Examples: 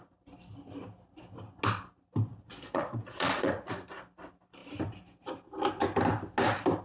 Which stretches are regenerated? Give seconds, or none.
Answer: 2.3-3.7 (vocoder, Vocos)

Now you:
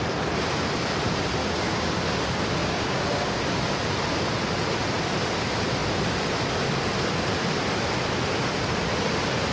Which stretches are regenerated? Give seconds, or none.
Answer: 1.4-1.9 (codec, DAC); 2.6-3.4

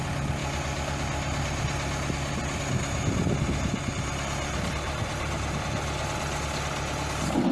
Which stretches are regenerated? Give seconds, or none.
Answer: none

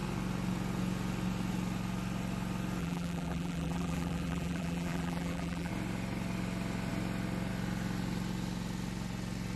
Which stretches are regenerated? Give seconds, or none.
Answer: 2.8-5.7 (vocoder, BigVGAN v2)

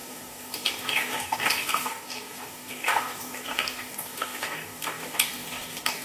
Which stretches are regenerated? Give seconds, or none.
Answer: 0.0-6.0 (codec, DAC)

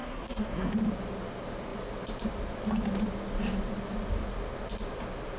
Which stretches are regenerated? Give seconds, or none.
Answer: 0.0-0.7 (codec, SNAC)

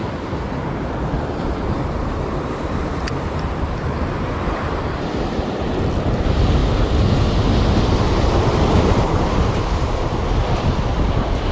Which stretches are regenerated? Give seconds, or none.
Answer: 0.0-6.6 (vocoder, BigVGAN v2); 8.4-11.5

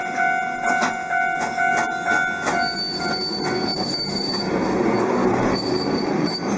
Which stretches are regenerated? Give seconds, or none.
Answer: 3.7-4.5 (vocoder, BigVGAN v2); 5.2-6.6